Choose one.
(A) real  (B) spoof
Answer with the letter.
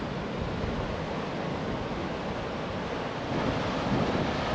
A